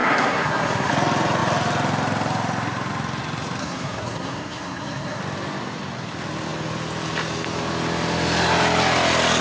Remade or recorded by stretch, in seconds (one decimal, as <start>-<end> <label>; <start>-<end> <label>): 0.0-0.9 remade; 0.9-3.6 recorded; 3.6-5.2 remade; 5.2-9.4 recorded